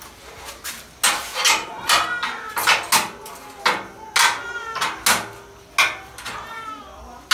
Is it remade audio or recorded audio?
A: recorded